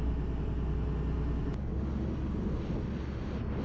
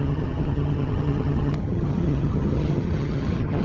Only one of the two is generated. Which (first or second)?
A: second